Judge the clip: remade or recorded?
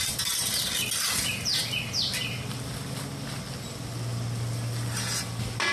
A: recorded